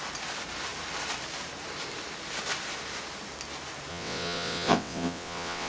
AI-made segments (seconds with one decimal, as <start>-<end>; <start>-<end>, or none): 3.9-5.7